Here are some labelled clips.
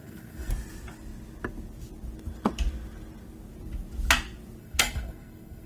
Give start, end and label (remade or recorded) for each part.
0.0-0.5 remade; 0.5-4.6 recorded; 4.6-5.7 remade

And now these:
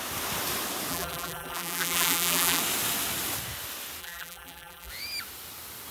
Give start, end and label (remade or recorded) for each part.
0.0-0.9 recorded; 0.9-2.6 remade; 2.6-4.0 recorded; 4.0-4.9 remade; 4.9-5.9 recorded

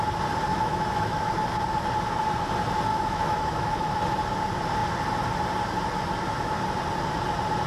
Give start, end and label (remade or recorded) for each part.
0.0-0.5 recorded; 0.5-1.3 remade; 1.3-2.9 recorded; 2.9-4.0 remade; 4.0-7.7 recorded